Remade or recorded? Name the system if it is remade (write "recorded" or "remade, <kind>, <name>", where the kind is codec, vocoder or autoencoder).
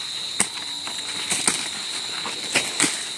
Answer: recorded